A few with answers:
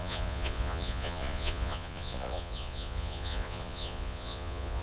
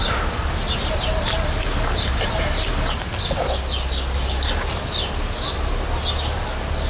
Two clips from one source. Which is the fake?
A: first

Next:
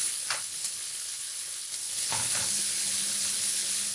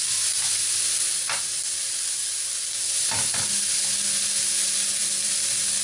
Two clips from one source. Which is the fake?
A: first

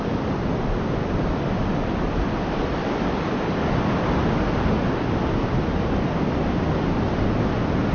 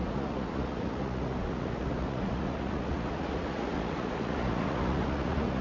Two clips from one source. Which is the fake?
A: second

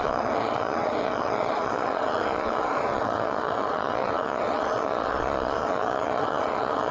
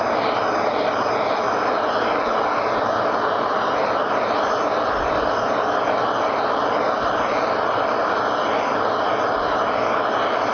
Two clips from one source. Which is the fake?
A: first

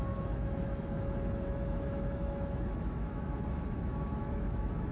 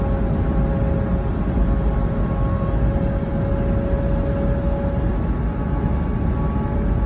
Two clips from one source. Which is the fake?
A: first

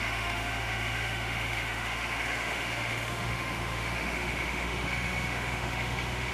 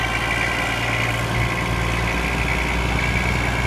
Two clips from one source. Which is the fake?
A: first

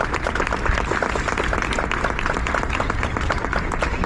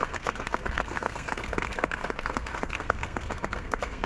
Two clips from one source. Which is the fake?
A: second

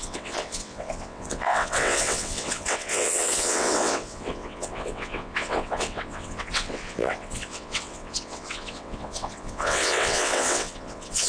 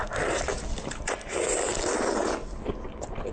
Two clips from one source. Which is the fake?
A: first